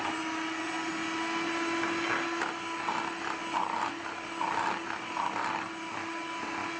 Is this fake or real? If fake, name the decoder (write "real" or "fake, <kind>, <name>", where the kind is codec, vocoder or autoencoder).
real